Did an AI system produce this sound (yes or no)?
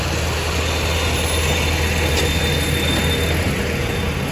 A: no